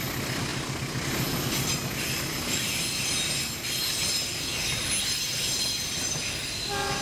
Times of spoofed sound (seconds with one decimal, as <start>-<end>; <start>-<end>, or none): none